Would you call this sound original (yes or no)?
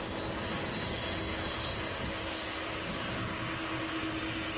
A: yes